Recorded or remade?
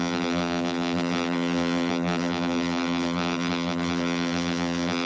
remade